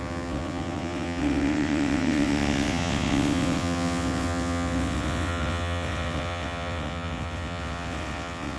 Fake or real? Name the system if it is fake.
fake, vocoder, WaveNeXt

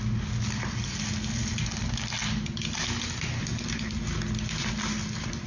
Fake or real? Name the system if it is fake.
real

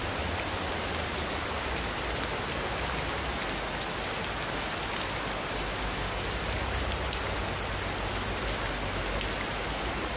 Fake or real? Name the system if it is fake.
real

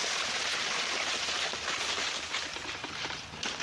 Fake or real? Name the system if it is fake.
real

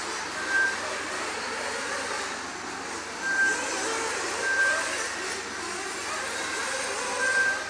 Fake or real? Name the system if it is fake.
real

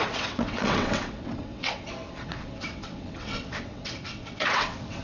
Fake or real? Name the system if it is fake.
fake, vocoder, WaveNeXt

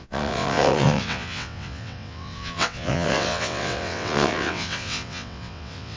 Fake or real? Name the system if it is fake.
fake, vocoder, WaveNeXt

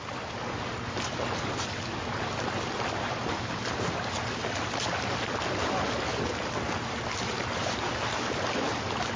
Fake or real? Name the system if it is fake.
real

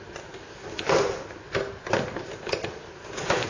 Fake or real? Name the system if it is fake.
real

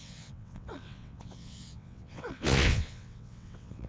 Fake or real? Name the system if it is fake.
fake, vocoder, WaveNeXt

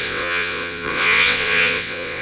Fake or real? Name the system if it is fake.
fake, vocoder, WaveNeXt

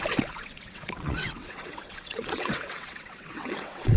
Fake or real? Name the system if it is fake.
fake, vocoder, WaveNeXt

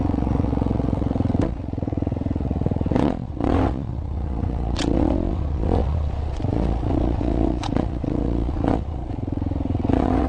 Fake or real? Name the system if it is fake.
fake, vocoder, WaveNeXt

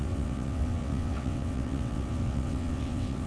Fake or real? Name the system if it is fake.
fake, vocoder, WaveNeXt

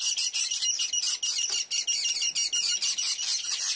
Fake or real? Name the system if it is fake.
real